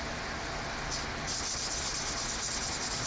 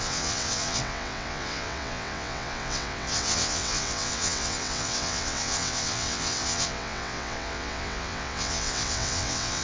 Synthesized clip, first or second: second